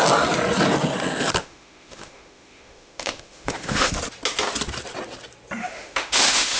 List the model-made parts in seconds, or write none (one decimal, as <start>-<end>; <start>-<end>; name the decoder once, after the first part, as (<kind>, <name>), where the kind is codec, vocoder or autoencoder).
1.4-3.9 (autoencoder, DAC-VAE); 5.6-6.6